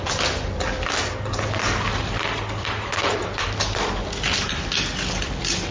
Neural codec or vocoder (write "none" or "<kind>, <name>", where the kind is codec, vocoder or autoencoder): none